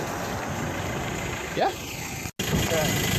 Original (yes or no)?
yes